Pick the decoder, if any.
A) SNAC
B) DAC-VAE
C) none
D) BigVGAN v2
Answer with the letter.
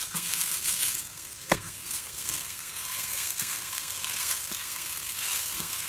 A